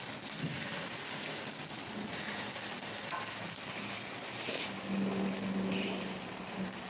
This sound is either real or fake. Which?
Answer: real